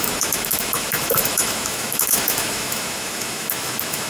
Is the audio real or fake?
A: fake